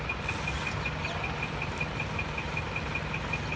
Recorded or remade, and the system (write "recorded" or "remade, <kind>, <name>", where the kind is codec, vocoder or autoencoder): recorded